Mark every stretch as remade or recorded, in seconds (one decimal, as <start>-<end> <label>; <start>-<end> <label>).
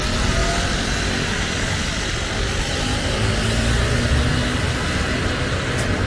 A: 0.0-6.1 recorded